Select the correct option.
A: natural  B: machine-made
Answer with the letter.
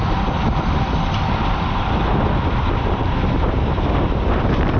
A